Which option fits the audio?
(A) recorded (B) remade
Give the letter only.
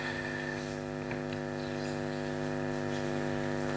A